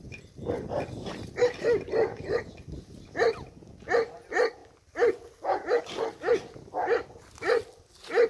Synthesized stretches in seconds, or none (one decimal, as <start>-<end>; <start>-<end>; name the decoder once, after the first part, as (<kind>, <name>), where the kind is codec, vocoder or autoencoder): none